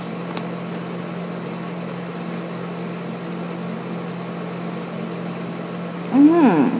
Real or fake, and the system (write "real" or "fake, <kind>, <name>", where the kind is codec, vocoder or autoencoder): real